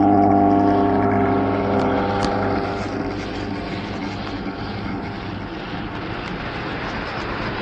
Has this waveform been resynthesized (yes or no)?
no